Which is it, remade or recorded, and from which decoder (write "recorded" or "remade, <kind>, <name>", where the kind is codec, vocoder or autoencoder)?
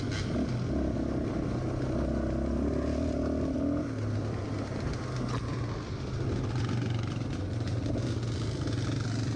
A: recorded